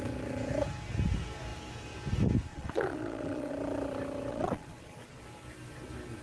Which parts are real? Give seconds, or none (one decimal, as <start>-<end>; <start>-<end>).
0.0-2.5; 3.5-4.3; 5.2-6.2